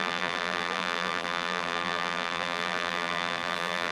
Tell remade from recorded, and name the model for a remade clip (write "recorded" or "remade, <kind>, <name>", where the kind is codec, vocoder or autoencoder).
remade, vocoder, BigVGAN v2